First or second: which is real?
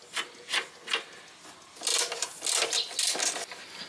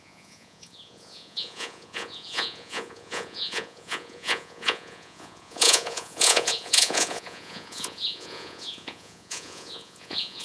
first